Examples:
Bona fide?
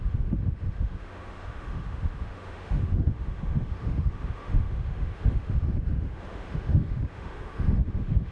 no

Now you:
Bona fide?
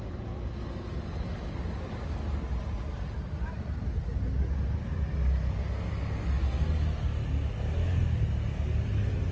yes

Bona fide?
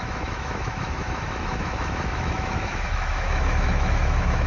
no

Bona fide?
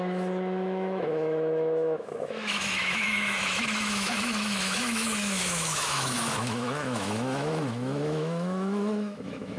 no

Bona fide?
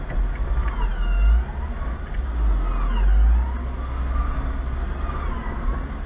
yes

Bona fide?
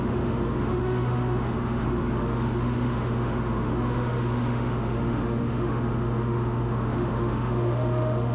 no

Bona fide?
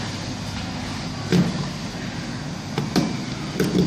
yes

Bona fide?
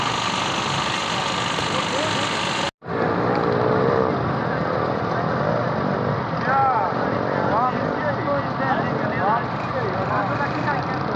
yes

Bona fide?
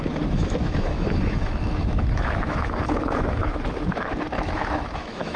no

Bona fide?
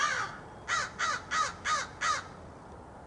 yes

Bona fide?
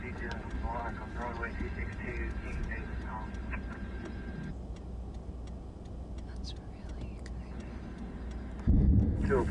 yes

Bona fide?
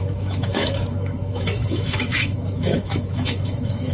no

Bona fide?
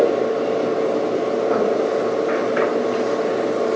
yes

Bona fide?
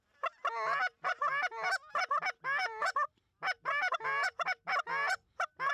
yes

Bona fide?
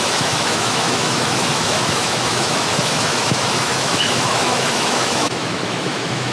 no